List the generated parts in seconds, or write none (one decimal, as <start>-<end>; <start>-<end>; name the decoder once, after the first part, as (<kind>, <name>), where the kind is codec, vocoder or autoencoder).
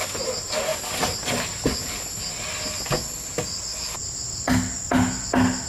none